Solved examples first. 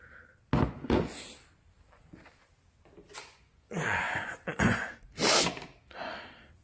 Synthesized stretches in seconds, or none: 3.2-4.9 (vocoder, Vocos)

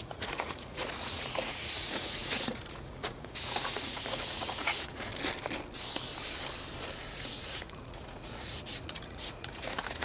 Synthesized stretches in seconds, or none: 0.0-5.1 (vocoder, Vocos); 7.1-10.0

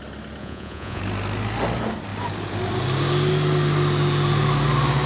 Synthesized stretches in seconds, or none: 0.4-1.0 (vocoder, Vocos)

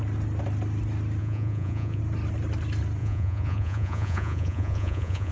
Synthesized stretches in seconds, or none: 1.2-2.0 (vocoder, Vocos); 3.0-5.3

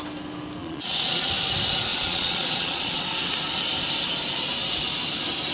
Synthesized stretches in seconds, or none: 0.6-1.3 (vocoder, Vocos); 1.9-3.0